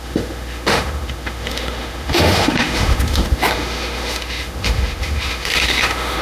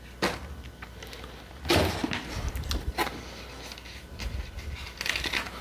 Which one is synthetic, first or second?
first